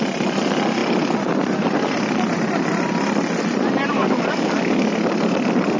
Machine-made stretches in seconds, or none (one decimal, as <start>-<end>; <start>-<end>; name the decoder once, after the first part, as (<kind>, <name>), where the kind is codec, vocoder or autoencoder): 3.9-4.9 (codec, DAC)